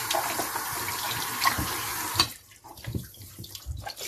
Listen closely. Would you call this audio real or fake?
fake